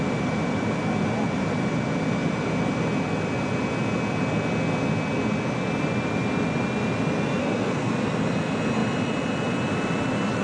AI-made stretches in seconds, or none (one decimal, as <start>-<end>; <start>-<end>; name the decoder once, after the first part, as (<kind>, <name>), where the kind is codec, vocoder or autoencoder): 7.4-7.9 (codec, SNAC)